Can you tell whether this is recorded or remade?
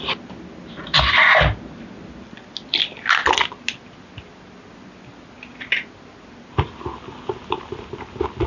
recorded